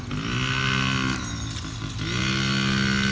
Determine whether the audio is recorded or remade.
recorded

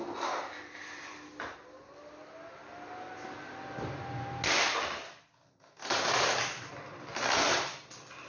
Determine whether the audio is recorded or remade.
recorded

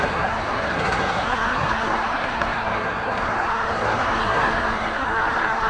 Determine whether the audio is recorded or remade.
remade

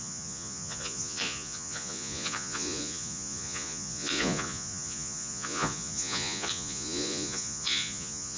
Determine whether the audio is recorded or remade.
remade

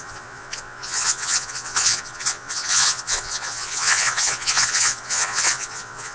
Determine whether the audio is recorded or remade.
remade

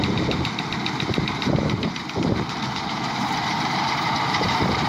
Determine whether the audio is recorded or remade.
remade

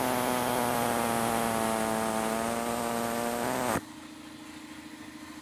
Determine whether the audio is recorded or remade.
recorded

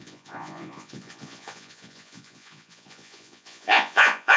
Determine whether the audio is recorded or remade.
remade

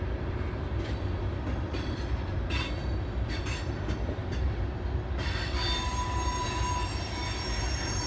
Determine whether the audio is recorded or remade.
recorded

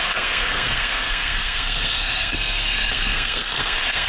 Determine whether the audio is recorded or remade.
remade